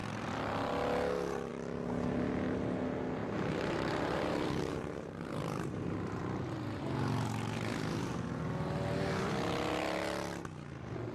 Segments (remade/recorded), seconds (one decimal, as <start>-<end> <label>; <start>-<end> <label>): 0.0-3.2 recorded; 3.2-6.2 remade; 6.2-11.1 recorded